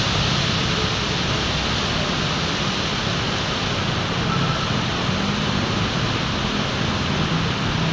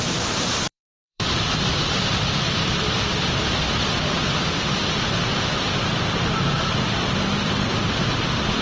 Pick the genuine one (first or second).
first